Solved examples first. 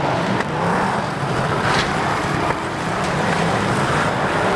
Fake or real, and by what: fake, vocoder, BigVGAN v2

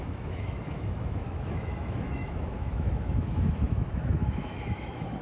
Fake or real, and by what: fake, autoencoder, DAC-VAE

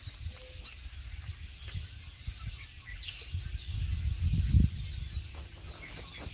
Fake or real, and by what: real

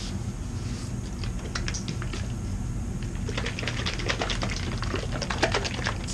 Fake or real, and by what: real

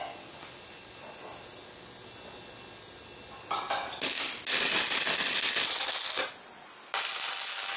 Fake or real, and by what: real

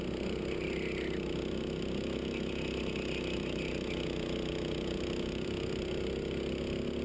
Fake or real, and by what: real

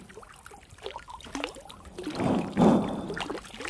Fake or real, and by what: fake, vocoder, BigVGAN v2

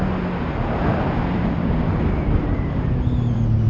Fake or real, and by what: real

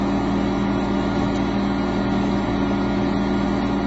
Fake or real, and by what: real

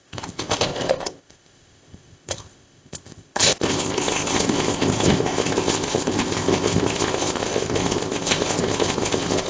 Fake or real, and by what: fake, codec, ZipCodec